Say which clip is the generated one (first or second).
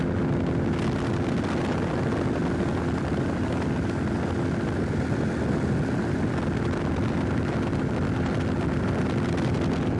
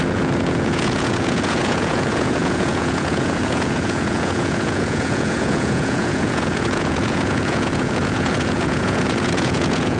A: second